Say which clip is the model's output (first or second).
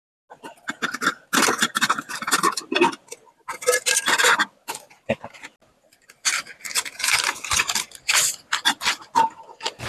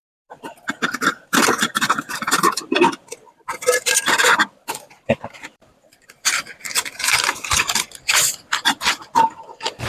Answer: second